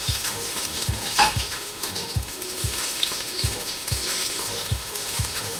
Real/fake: fake